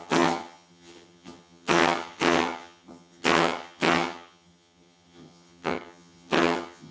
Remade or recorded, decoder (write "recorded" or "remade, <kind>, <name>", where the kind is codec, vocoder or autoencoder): remade, vocoder, HiFi-GAN